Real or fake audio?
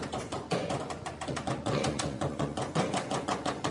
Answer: fake